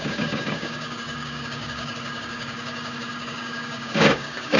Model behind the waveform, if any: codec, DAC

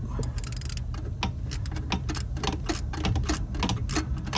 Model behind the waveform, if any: none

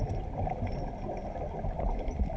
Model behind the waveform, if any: none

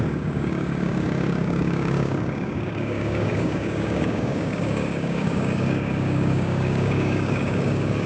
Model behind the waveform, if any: codec, DAC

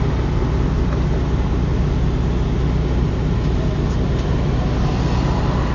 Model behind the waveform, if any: none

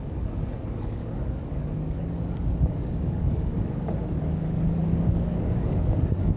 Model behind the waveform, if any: codec, DAC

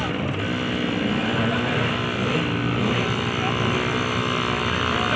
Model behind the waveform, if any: none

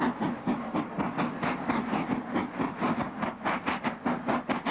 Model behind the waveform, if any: none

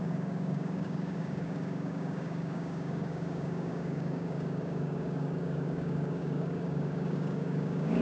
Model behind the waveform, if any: codec, DAC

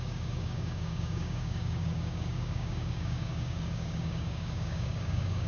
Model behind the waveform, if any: codec, DAC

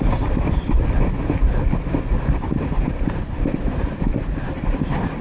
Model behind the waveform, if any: none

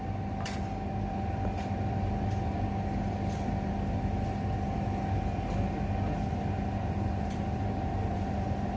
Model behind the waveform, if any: none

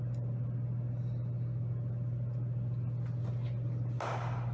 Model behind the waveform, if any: none